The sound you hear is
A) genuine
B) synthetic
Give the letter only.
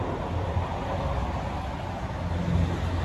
A